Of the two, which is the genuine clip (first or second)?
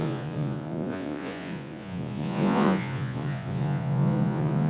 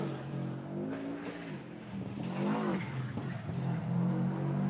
second